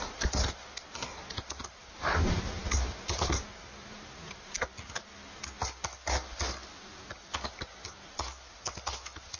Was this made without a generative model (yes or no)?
yes